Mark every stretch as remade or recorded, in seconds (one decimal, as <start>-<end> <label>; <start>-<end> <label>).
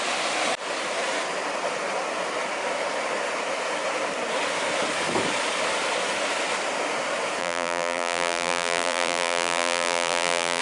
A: 0.0-7.4 recorded; 7.4-10.6 remade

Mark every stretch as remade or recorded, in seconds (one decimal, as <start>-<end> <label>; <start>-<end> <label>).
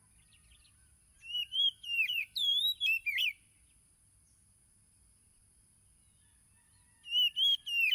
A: 0.0-1.4 recorded; 1.4-2.6 remade; 2.6-7.9 recorded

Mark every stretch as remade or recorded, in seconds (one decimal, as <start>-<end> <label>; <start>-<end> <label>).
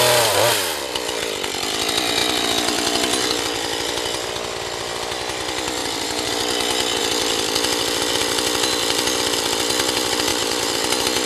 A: 0.0-5.8 recorded; 5.8-6.3 remade; 6.3-10.3 recorded; 10.3-11.3 remade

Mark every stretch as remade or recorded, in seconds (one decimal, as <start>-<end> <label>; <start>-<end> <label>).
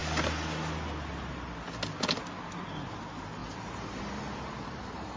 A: 0.0-3.4 recorded; 3.4-5.2 remade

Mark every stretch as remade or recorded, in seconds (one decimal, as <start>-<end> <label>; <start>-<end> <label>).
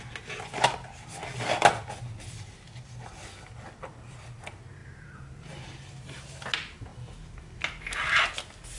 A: 0.0-4.8 recorded; 4.8-5.4 remade; 5.4-8.8 recorded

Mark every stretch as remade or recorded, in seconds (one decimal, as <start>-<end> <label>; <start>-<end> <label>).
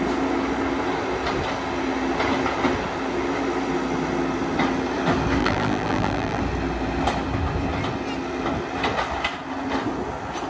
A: 0.0-5.4 recorded; 5.4-6.4 remade; 6.4-10.5 recorded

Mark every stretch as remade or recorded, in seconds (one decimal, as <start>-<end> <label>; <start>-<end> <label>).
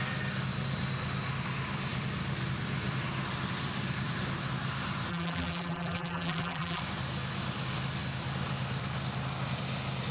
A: 0.0-5.1 recorded; 5.1-6.8 remade; 6.8-10.1 recorded